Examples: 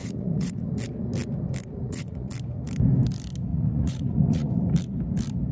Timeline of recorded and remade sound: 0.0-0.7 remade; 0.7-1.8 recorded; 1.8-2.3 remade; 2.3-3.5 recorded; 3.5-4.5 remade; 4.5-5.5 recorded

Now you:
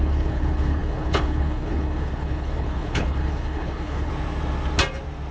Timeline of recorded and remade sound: 0.0-4.1 remade; 4.1-5.3 recorded

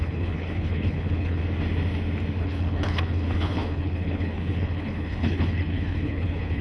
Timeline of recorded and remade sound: 0.0-1.4 remade; 1.4-2.4 recorded; 2.4-6.6 remade

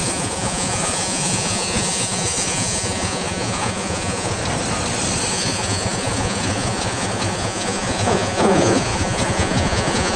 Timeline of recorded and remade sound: 0.0-4.4 remade; 4.4-5.3 recorded; 5.3-10.2 remade

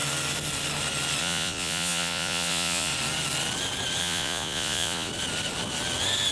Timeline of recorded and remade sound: 0.0-1.2 recorded; 1.2-2.9 remade; 2.9-4.0 recorded; 4.0-5.1 remade; 5.1-6.3 recorded